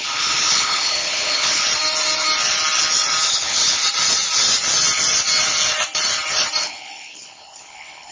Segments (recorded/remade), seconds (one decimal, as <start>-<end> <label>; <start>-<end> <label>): 0.0-1.6 remade; 1.6-3.3 recorded; 3.3-3.8 remade; 3.8-6.6 recorded; 6.6-8.1 remade